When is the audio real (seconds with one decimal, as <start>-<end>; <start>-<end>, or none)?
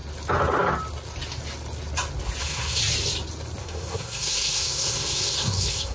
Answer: 0.0-2.4; 2.8-3.6